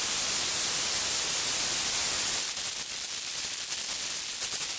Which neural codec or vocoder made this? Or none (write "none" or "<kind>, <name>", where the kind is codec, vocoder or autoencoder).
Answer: none